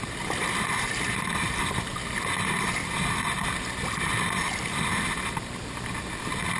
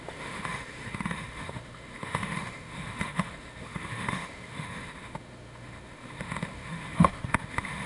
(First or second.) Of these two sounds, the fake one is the second